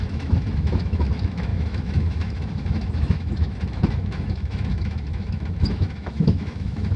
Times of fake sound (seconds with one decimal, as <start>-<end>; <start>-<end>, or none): 0.0-7.0